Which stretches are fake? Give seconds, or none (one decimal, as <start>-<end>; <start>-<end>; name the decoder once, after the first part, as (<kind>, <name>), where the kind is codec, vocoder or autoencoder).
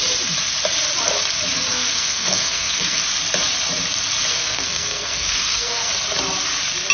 1.7-3.0 (codec, SNAC); 4.3-5.9